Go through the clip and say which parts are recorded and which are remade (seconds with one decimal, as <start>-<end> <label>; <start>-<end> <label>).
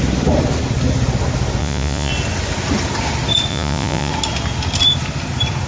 0.0-1.6 recorded; 1.6-2.1 remade; 2.1-3.5 recorded; 3.5-4.1 remade; 4.1-5.7 recorded